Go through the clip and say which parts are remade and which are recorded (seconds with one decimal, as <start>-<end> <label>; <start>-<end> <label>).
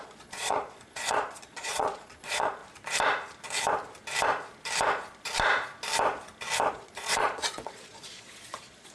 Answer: 0.0-2.6 remade; 2.6-6.7 recorded; 6.7-8.9 remade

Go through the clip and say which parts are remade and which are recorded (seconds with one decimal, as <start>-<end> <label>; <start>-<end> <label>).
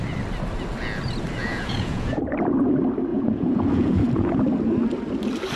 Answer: 0.0-1.4 recorded; 1.4-2.2 remade; 2.2-3.1 recorded; 3.1-4.4 remade; 4.4-5.6 recorded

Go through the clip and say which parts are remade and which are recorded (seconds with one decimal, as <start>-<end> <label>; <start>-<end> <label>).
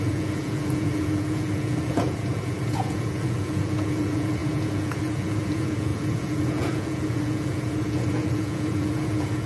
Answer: 0.0-9.5 remade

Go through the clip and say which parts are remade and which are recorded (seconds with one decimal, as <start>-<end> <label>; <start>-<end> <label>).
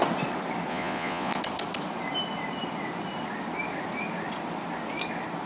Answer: 0.0-0.7 recorded; 0.7-1.4 remade; 1.4-5.5 recorded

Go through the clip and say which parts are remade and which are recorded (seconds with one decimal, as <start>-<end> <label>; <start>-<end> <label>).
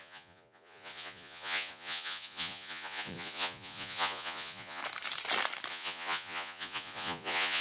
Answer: 0.0-4.8 remade; 4.8-5.7 recorded; 5.7-7.6 remade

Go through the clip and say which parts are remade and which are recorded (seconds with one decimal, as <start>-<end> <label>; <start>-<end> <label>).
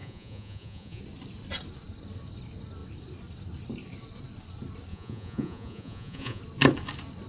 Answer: 0.0-1.0 remade; 1.0-4.9 recorded; 4.9-6.4 remade; 6.4-7.3 recorded